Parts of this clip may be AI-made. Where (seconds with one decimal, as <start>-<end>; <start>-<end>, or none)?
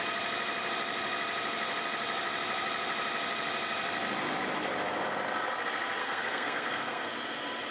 6.0-7.1